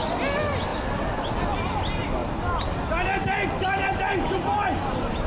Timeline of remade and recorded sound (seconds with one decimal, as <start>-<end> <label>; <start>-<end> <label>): 0.0-5.3 recorded